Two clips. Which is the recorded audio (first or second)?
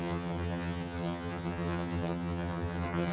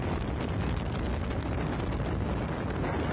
second